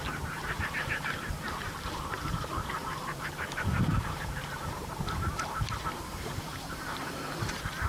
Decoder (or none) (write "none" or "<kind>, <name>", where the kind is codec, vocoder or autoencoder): vocoder, BigVGAN v2